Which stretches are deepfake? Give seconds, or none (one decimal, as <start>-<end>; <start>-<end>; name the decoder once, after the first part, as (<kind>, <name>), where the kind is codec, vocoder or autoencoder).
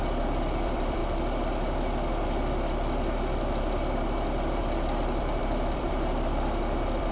0.0-1.0 (vocoder, BigVGAN v2); 4.6-7.1